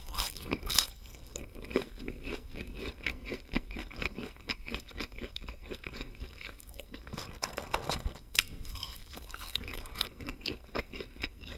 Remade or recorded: remade